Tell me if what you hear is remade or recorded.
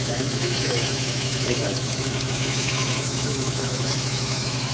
remade